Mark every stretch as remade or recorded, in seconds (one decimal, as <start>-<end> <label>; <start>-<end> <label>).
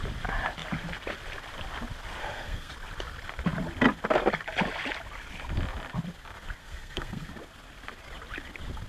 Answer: 0.0-2.2 recorded; 2.2-2.7 remade; 2.7-6.6 recorded; 6.6-7.3 remade; 7.3-8.9 recorded